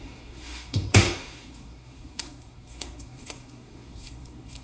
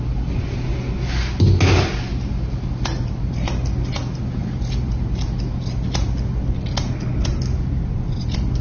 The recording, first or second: second